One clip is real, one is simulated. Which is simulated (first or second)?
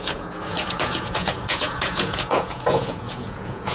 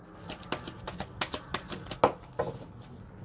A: first